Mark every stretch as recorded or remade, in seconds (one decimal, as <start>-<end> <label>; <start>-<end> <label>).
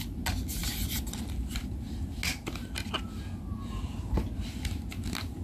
0.0-5.4 recorded